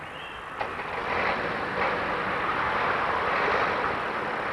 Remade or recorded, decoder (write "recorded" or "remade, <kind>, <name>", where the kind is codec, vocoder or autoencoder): recorded